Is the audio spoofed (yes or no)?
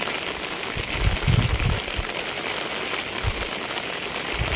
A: no